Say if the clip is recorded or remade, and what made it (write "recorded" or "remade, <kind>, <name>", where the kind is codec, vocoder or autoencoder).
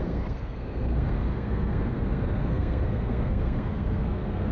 remade, codec, SNAC